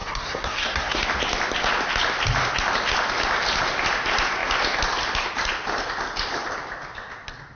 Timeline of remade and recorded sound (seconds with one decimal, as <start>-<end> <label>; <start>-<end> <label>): 0.0-1.0 remade; 1.0-7.6 recorded